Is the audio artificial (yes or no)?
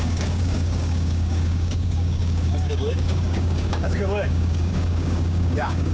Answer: yes